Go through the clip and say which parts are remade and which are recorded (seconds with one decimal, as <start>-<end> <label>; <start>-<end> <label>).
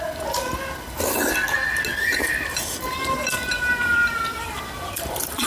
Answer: 0.0-2.1 recorded; 2.1-5.5 remade